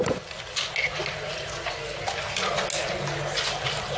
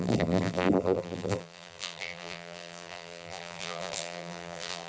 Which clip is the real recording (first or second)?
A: first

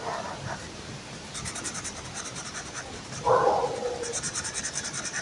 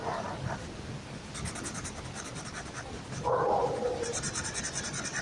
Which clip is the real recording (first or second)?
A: second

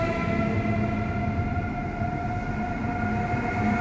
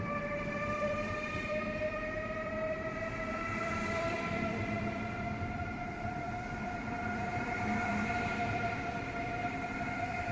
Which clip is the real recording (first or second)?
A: first